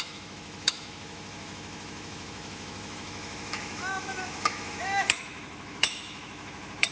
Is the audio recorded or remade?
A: remade